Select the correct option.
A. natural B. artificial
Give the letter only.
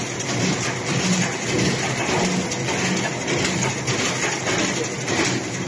A